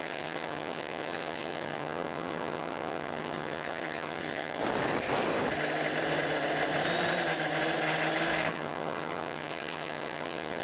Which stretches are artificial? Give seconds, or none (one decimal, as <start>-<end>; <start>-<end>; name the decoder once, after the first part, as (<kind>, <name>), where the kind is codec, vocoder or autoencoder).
0.0-4.6 (vocoder, HiFi-GAN); 8.5-10.6